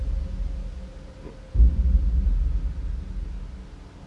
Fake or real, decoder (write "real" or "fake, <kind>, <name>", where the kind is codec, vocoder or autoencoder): real